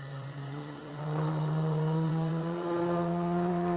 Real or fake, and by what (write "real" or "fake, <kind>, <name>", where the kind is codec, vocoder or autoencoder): fake, vocoder, WaveNeXt